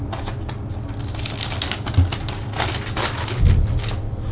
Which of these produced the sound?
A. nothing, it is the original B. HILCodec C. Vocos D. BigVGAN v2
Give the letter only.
A